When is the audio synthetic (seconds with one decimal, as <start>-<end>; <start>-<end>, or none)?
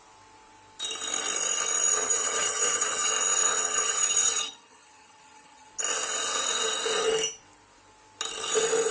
1.9-3.1; 3.5-5.7